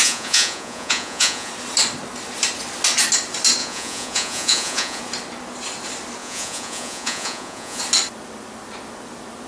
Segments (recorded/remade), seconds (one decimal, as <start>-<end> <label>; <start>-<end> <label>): 0.0-1.5 remade; 1.5-3.6 recorded; 3.6-5.0 remade; 5.0-6.2 recorded; 6.2-7.8 remade; 7.8-9.5 recorded